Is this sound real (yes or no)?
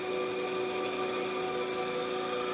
yes